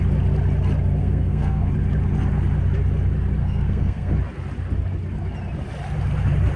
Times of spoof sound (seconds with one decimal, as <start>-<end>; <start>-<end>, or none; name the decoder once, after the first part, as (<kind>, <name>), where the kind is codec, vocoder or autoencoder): 1.0-1.7 (codec, SNAC); 3.4-4.1